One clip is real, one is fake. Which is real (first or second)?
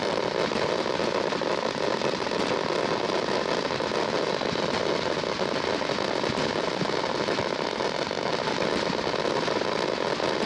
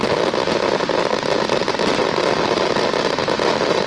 second